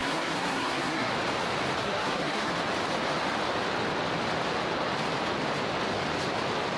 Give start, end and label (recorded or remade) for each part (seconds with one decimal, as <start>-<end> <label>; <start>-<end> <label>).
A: 0.0-1.1 remade; 1.1-1.8 recorded; 1.8-2.5 remade; 2.5-6.8 recorded